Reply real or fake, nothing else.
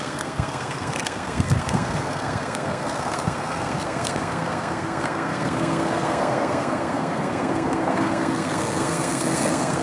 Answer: fake